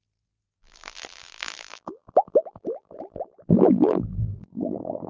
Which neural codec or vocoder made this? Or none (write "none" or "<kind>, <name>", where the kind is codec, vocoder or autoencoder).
vocoder, BigVGAN v2